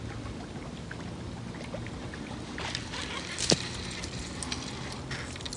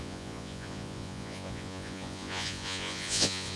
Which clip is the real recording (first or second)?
first